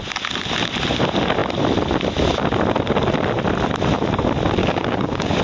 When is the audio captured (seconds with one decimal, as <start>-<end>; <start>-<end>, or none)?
0.0-4.6